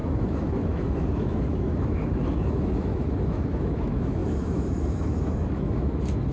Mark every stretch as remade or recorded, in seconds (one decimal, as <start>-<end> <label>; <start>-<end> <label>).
0.0-6.3 remade